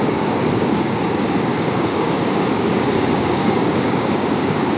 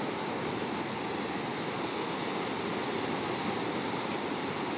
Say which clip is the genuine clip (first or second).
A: second